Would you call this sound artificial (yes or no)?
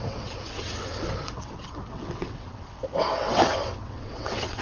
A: yes